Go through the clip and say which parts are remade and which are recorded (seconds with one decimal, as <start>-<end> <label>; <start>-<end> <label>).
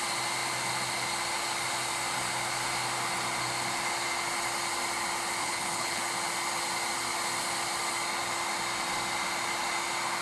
0.0-5.4 recorded; 5.4-6.0 remade; 6.0-10.2 recorded